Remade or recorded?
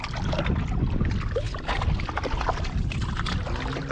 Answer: recorded